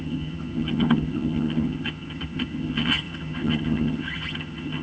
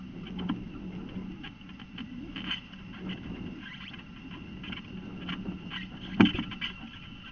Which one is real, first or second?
second